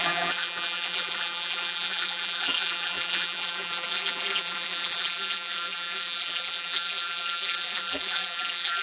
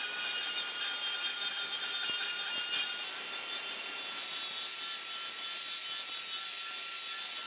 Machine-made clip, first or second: first